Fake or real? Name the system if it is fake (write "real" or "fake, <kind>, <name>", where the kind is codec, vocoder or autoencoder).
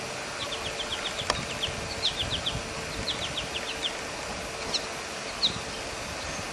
real